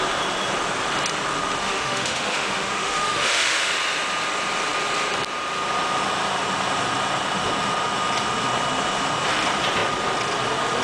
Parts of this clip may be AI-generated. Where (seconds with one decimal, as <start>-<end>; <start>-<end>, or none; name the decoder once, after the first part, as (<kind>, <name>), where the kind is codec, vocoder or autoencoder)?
1.6-3.7 (autoencoder, DAC-VAE)